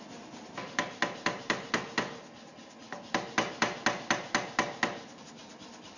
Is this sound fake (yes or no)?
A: no